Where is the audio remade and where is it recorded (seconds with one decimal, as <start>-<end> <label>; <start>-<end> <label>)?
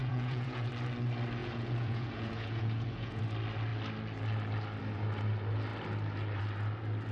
0.0-0.7 remade; 0.7-1.4 recorded; 1.4-3.2 remade; 3.2-7.1 recorded